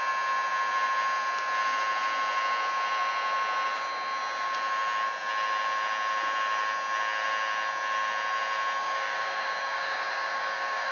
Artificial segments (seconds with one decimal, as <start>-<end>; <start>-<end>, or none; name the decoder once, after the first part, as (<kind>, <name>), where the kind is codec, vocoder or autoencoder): 8.8-10.9 (codec, DAC)